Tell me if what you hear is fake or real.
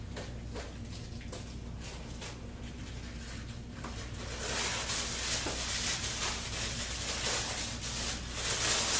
real